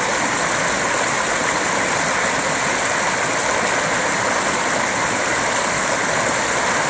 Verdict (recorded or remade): recorded